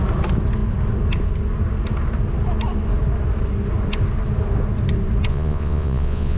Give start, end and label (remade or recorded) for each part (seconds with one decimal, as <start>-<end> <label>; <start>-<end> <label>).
0.0-5.3 recorded; 5.3-6.4 remade